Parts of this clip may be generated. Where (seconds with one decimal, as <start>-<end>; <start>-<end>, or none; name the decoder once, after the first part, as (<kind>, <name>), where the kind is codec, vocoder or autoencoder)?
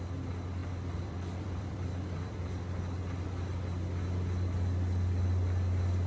0.6-3.4 (vocoder, BigVGAN v2)